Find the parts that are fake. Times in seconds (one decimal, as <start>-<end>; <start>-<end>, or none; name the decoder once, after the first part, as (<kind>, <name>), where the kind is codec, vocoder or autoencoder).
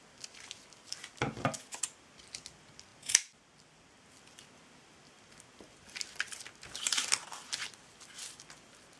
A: none